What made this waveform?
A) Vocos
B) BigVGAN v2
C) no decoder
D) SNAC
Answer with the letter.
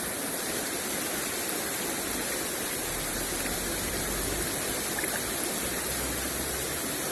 C